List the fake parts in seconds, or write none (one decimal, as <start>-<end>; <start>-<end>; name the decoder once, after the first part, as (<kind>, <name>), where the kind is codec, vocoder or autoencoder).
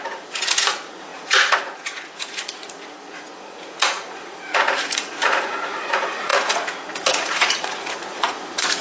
0.0-8.8 (vocoder, Vocos)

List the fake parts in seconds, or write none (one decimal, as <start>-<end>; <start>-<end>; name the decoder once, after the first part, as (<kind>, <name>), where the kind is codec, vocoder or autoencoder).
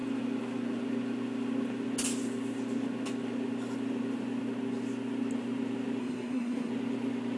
6.0-6.7 (codec, SNAC)